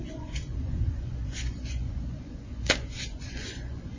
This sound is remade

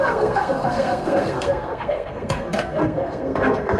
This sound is remade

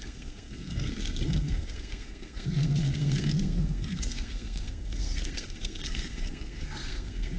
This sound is remade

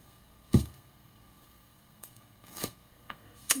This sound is remade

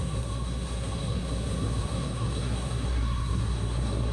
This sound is remade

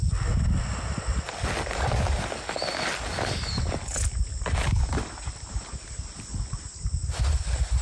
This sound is recorded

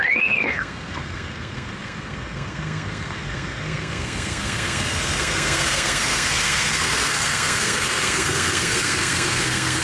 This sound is remade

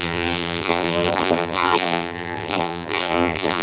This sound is remade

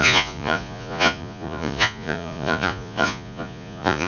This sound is remade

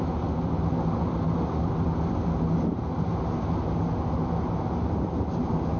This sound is recorded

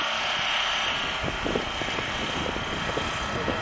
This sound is recorded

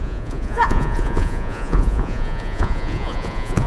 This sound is remade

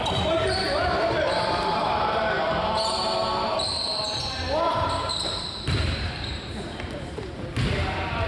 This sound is remade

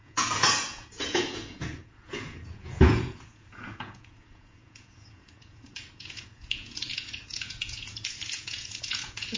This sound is remade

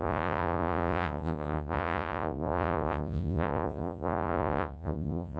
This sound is remade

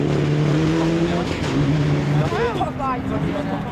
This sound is recorded